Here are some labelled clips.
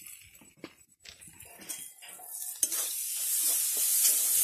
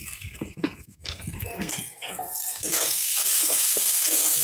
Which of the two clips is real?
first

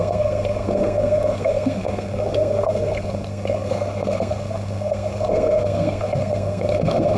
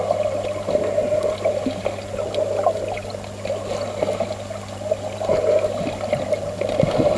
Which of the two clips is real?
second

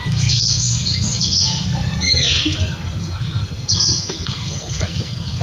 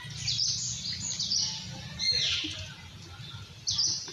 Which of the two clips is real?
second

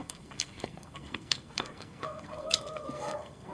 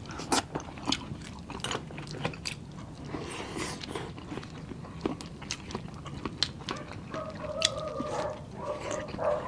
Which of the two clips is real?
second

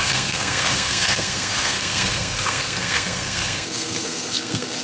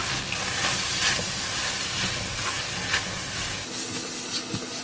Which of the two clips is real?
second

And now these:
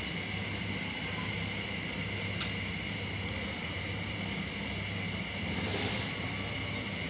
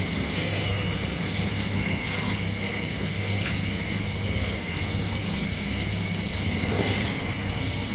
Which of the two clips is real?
first